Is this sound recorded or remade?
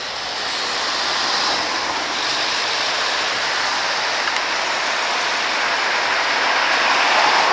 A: recorded